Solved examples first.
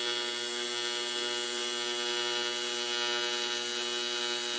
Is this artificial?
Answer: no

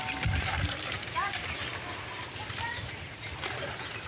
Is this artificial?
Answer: no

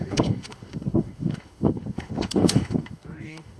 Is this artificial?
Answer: yes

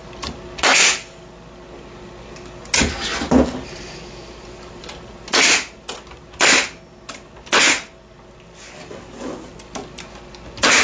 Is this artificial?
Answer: no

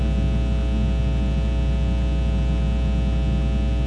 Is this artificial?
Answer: no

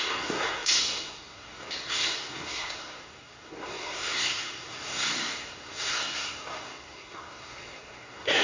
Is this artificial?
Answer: yes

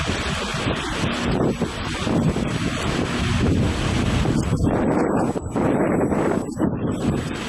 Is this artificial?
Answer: no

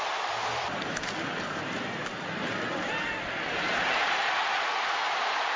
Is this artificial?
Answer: no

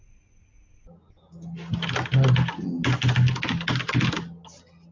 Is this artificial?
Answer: no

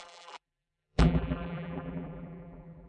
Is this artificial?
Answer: yes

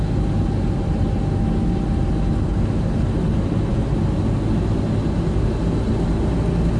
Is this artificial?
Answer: no